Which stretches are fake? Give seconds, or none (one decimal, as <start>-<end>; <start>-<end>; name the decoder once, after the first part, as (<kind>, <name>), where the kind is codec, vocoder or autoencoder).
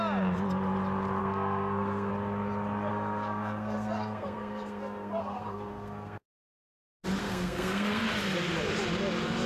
1.2-2.1 (codec, SNAC); 2.9-6.7; 7.2-8.0